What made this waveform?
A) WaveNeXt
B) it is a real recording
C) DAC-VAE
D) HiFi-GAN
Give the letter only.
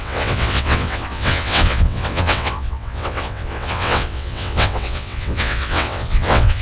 A